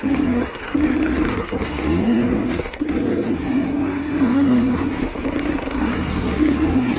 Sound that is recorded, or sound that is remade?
remade